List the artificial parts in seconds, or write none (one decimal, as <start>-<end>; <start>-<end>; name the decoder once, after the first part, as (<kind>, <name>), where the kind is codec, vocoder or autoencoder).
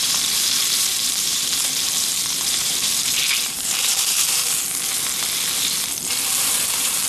0.0-4.4 (vocoder, BigVGAN v2); 6.4-7.1